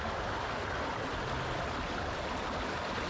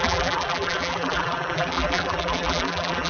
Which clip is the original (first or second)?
first